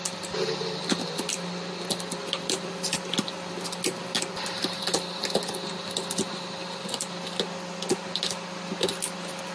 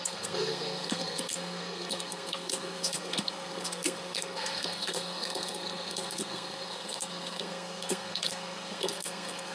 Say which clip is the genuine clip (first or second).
first